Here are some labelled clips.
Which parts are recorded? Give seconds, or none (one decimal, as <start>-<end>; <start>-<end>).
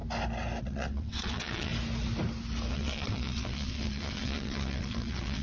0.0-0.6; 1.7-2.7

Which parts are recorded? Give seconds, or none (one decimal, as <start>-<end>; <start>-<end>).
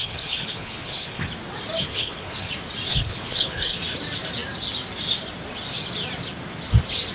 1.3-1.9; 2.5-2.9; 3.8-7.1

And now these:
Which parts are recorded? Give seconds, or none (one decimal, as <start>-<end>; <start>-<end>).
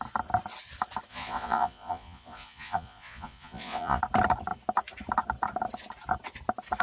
0.0-1.1; 4.0-6.8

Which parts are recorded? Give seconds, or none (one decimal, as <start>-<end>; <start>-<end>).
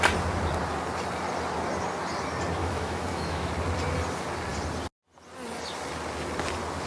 0.0-2.6; 3.5-6.9